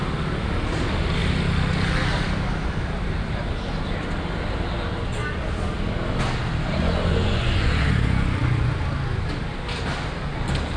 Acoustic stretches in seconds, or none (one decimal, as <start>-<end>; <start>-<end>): 0.0-6.8; 8.8-10.8